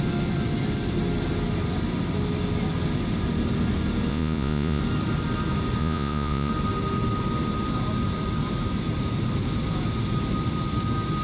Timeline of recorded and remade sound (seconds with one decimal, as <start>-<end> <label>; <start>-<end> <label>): 0.0-4.1 recorded; 4.1-4.8 remade; 4.8-5.8 recorded; 5.8-6.5 remade; 6.5-11.2 recorded